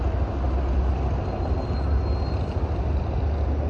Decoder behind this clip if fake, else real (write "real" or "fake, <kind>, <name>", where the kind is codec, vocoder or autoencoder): real